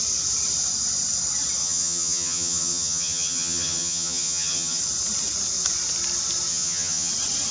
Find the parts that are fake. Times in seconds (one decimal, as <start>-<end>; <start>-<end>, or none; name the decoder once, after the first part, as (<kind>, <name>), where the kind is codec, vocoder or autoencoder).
1.6-4.8 (vocoder, HiFi-GAN); 6.5-7.1